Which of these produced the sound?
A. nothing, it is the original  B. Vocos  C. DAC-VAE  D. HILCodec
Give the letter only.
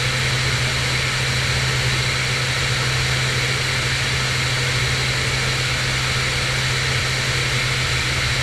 A